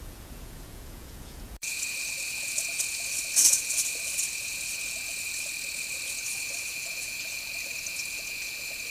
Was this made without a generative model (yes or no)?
no